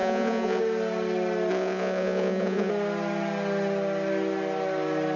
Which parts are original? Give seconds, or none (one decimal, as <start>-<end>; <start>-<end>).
0.6-1.5; 2.7-5.2